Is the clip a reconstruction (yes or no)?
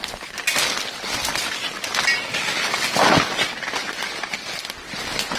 no